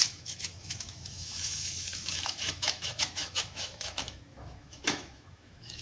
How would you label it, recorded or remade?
remade